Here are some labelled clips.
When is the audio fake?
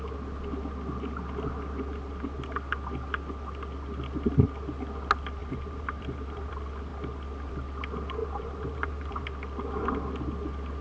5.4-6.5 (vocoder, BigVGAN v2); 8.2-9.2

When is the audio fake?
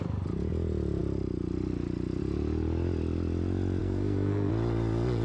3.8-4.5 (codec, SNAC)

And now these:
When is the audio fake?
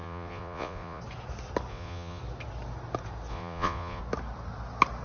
0.0-1.0 (vocoder, Vocos); 1.7-2.2; 3.3-4.0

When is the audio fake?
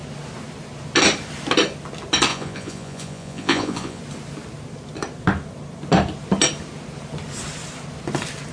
2.3-4.0 (vocoder, Vocos)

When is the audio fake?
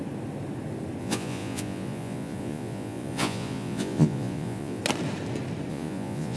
1.0-4.8 (vocoder, Vocos); 5.7-6.4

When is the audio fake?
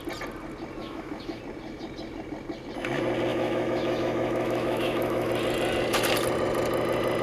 0.8-1.4 (autoencoder, DAC-VAE); 3.3-5.3